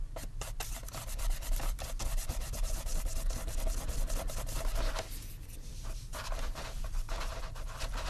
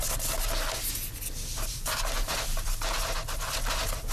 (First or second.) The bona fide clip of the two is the second